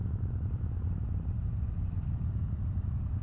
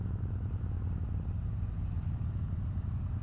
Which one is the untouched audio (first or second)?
second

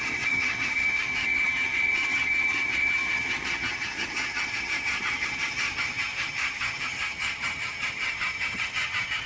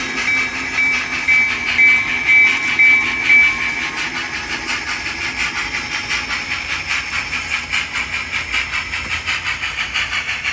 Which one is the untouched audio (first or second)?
second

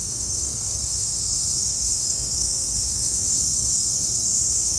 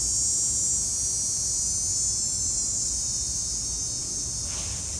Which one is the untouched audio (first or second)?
second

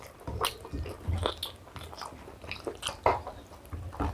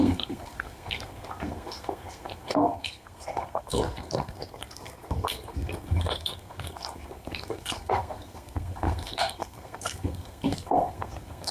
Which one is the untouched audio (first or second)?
first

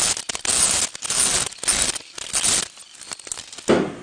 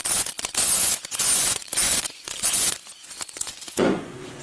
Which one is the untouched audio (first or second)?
first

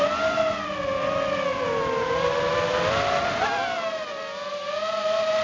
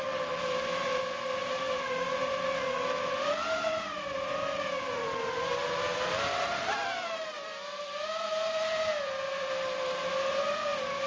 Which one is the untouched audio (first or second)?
first